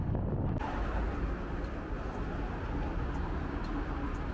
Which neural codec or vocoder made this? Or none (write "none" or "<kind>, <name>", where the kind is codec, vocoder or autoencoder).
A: none